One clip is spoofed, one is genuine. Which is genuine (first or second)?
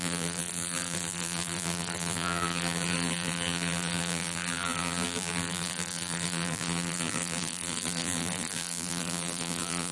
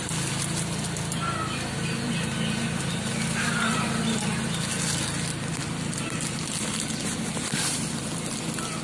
second